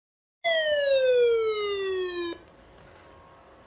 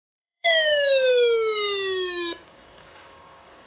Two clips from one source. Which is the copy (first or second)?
second